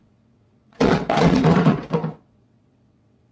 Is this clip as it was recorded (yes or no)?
no